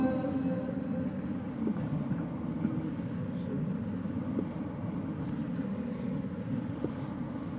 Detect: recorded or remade recorded